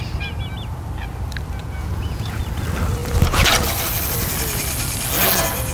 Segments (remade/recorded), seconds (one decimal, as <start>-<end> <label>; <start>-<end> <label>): 0.0-1.6 recorded; 1.6-2.4 remade; 2.4-5.7 recorded